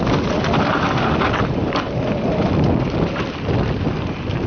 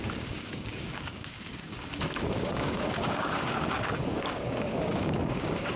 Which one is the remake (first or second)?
second